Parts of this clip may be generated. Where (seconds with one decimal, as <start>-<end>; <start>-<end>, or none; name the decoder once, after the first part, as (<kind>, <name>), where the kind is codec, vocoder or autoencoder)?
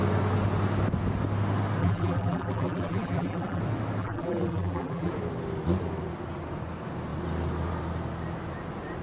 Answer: 1.8-3.6 (vocoder, BigVGAN v2); 4.0-5.1